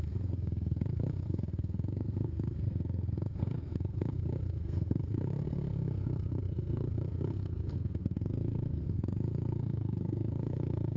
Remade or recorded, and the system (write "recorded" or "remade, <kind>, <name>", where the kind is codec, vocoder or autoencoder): remade, codec, SNAC